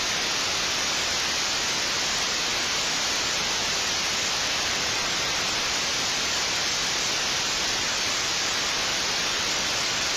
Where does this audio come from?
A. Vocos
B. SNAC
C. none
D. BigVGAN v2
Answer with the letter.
D